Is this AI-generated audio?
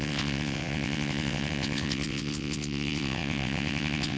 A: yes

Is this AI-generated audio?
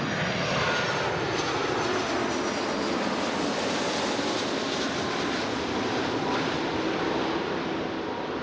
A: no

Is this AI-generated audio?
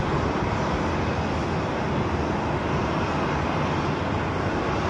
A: no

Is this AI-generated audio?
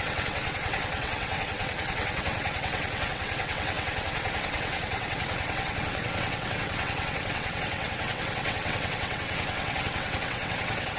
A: yes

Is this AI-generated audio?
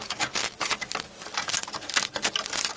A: no